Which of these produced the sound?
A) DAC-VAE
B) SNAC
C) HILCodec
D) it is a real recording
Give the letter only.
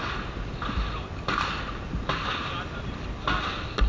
D